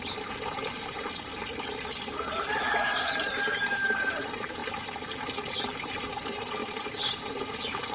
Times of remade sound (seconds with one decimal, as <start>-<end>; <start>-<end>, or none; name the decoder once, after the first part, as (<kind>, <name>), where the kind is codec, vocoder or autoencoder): 0.0-1.3 (vocoder, BigVGAN v2); 3.0-7.9